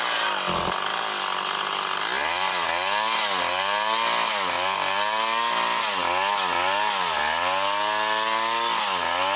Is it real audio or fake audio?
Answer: real